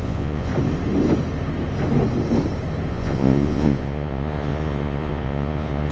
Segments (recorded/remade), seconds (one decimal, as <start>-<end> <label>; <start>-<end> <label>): 0.0-0.5 remade; 0.5-2.9 recorded; 2.9-5.9 remade